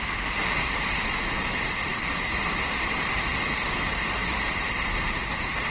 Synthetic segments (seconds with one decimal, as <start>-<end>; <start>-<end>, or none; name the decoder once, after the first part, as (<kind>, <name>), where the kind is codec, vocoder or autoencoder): 1.9-2.4 (vocoder, BigVGAN v2); 4.2-5.2

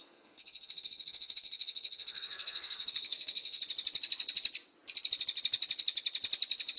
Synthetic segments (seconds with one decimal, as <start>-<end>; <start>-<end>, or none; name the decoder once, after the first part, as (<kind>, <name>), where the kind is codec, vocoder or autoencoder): 0.0-3.6 (codec, SNAC)

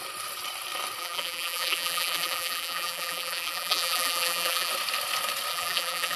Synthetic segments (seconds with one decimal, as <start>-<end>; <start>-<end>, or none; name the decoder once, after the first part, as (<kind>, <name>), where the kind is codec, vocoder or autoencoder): 1.0-4.7 (vocoder, BigVGAN v2); 5.5-6.2

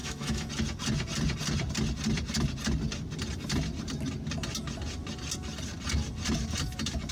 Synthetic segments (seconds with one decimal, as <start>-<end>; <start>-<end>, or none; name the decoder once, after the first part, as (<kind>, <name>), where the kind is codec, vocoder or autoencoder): 0.0-0.5 (autoencoder, DAC-VAE)

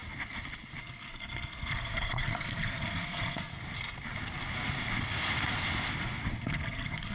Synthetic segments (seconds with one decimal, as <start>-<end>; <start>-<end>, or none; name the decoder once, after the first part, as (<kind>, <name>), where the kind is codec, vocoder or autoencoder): 0.8-3.5 (codec, SNAC); 6.4-7.1

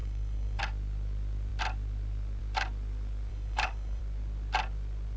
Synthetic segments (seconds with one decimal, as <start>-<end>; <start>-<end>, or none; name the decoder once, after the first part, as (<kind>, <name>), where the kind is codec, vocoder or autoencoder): 0.0-0.6 (codec, DAC); 3.3-4.0

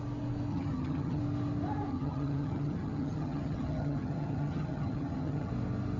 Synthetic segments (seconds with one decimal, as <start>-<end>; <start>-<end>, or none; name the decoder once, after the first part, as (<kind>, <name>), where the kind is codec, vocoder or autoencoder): 0.5-1.2 (vocoder, HiFi-GAN); 1.9-5.5